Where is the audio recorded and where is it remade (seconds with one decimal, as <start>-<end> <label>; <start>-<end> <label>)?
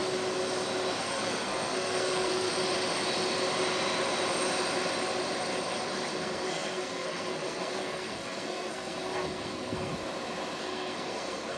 0.0-1.0 recorded; 1.0-2.5 remade; 2.5-6.1 recorded; 6.1-9.9 remade; 9.9-10.6 recorded; 10.6-11.6 remade